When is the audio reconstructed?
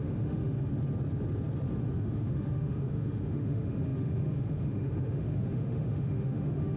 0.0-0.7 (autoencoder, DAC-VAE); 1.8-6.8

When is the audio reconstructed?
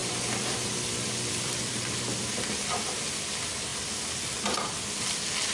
0.0-2.9 (vocoder, BigVGAN v2); 3.7-4.3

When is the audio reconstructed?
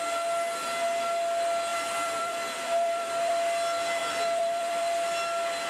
1.7-3.3 (vocoder, BigVGAN v2); 4.0-4.8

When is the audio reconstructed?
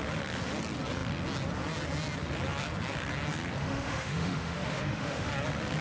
3.6-5.3 (autoencoder, DAC-VAE)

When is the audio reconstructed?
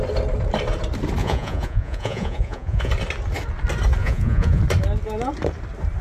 1.2-2.9 (vocoder, Vocos); 4.0-4.6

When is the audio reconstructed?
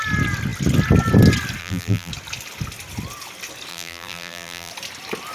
1.6-2.1 (vocoder, BigVGAN v2); 3.7-4.7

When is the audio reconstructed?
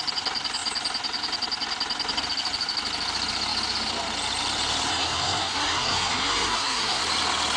4.9-7.0 (codec, SNAC)